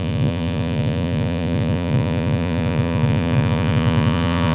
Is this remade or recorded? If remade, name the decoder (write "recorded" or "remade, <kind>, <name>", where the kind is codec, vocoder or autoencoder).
remade, vocoder, Vocos